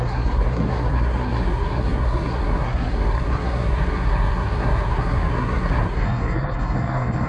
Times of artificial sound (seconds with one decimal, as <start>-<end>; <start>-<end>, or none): 0.0-7.3